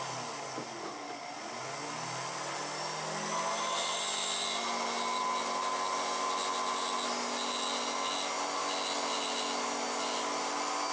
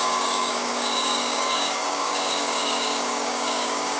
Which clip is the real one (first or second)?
first